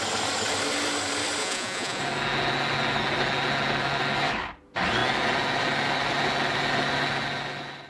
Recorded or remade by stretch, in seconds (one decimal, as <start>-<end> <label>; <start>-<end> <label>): 0.0-1.4 recorded; 1.4-2.0 remade; 2.0-7.9 recorded